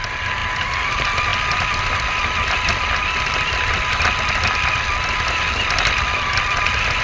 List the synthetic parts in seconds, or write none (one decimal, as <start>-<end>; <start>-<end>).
none